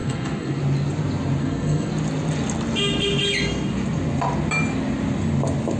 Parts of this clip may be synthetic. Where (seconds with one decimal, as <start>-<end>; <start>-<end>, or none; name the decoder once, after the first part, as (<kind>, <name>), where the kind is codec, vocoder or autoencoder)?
0.0-0.6 (codec, SNAC); 1.4-1.9